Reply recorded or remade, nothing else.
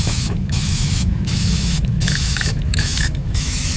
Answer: remade